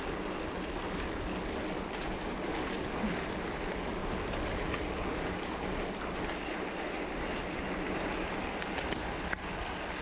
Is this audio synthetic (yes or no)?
no